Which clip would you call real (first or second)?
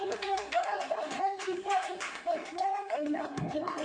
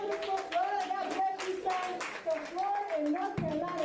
second